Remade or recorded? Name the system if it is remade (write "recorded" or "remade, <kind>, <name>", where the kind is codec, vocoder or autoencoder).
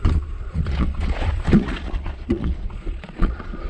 remade, vocoder, Vocos